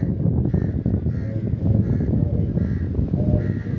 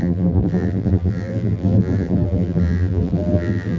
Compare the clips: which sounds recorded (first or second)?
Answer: first